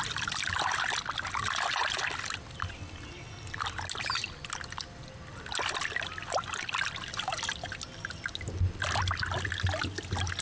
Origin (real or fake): real